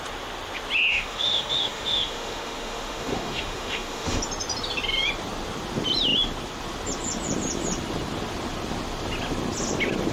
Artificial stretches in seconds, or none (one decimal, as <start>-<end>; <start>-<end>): 0.9-4.2

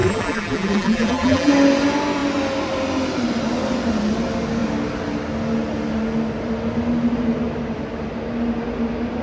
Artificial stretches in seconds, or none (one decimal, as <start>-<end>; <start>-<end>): 0.0-1.5

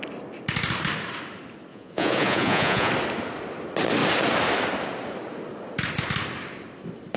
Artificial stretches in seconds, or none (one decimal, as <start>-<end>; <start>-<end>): 1.7-2.9

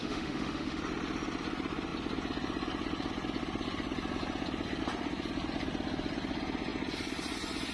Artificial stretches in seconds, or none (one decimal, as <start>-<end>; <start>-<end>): 0.0-0.8

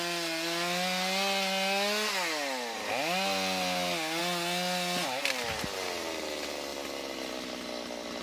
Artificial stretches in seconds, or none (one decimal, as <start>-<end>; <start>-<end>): none